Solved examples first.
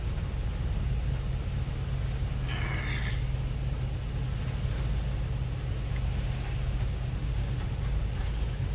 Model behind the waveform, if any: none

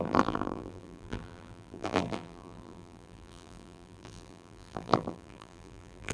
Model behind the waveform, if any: vocoder, BigVGAN v2